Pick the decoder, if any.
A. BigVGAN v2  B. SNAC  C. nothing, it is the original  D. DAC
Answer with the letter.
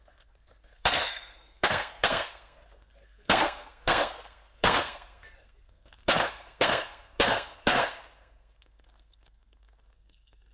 B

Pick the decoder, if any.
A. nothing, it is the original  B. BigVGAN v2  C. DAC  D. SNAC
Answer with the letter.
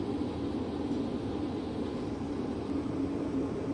A